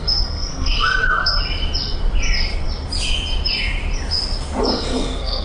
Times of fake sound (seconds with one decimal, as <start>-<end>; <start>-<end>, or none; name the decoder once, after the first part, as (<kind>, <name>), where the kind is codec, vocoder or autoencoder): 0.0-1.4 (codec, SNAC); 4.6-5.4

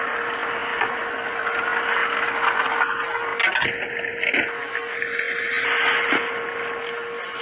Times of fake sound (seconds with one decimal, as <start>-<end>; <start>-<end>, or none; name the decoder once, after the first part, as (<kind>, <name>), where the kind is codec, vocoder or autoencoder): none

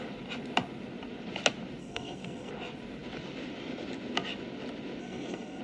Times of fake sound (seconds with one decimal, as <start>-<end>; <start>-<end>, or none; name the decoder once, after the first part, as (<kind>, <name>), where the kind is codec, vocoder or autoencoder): 1.8-2.5 (codec, SNAC); 5.0-5.6

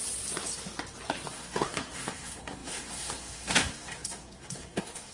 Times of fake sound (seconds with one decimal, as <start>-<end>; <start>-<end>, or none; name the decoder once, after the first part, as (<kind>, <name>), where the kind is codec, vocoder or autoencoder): 1.3-5.1 (codec, SNAC)

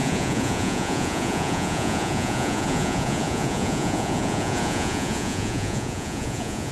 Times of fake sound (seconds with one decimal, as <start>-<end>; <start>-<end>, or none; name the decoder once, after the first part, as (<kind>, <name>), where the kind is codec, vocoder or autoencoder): 0.0-6.7 (vocoder, Vocos)

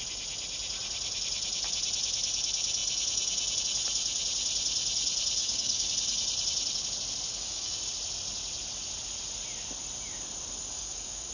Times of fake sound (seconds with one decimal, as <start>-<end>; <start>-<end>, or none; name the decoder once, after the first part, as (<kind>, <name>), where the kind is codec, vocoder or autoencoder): 5.4-5.9 (codec, DAC); 7.3-7.9; 10.7-11.3

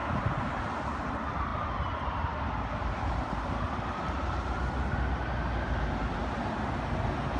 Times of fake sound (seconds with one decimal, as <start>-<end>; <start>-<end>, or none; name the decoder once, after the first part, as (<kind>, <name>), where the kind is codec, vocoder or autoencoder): none